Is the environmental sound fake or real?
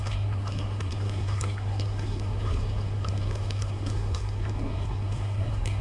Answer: fake